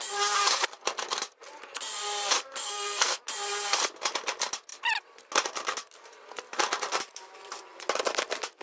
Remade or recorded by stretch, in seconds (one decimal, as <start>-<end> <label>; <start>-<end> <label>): 0.0-2.6 recorded; 2.6-3.2 remade; 3.2-8.6 recorded